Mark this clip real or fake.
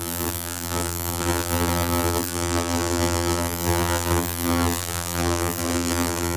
fake